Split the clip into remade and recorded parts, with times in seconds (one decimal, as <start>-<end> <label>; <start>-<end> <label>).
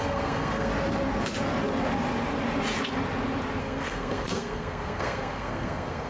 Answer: 0.0-0.7 remade; 0.7-3.6 recorded; 3.6-6.1 remade